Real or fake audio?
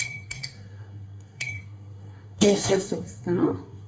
fake